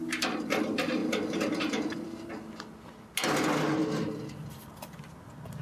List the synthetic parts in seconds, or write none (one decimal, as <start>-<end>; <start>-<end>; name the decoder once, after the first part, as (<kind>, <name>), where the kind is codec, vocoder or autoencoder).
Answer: 1.0-2.3 (vocoder, BigVGAN v2)